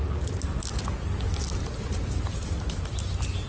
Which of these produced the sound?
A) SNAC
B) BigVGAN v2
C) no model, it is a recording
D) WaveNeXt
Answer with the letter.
C